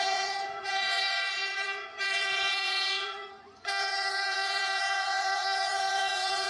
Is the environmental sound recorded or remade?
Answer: remade